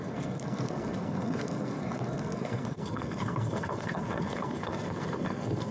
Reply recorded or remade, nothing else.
remade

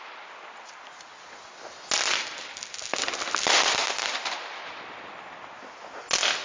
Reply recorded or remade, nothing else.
recorded